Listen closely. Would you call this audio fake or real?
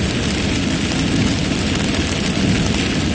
real